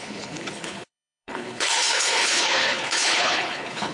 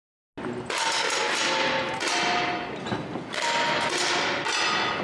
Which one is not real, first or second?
first